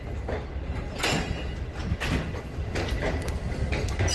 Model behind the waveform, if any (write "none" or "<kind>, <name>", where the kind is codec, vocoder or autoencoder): none